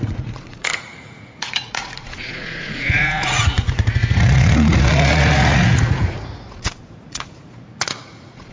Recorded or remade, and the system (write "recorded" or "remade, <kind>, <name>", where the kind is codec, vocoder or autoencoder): remade, vocoder, Vocos